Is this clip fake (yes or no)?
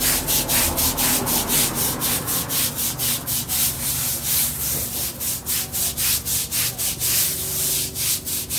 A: no